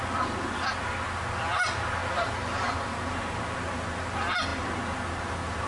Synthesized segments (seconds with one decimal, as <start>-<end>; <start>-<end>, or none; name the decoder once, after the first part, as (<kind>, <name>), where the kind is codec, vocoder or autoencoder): 2.0-3.4 (vocoder, BigVGAN v2)